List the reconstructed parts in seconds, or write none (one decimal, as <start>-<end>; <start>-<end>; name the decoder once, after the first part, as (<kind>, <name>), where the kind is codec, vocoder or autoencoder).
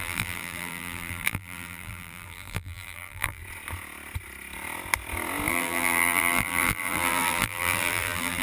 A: 0.0-3.4 (vocoder, BigVGAN v2); 5.5-8.4